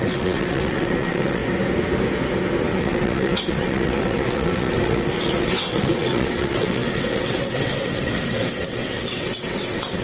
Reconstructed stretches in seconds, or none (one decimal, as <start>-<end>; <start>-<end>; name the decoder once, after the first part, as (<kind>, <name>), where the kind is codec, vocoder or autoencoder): 0.0-1.4 (vocoder, WaveNeXt); 2.7-10.0